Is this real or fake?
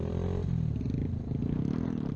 real